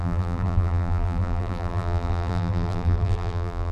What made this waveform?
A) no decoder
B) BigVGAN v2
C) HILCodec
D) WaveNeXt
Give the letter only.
B